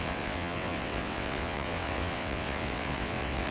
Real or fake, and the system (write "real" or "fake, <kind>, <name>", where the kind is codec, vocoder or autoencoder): fake, vocoder, WaveNeXt